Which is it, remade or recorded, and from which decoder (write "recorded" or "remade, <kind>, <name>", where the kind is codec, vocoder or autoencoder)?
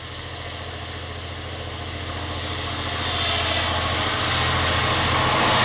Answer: recorded